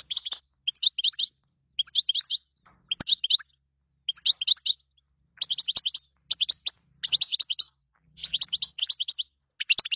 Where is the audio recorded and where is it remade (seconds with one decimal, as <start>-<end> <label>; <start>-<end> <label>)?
0.0-7.8 recorded; 7.8-8.4 remade; 8.4-10.0 recorded